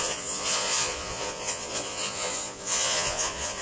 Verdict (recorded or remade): remade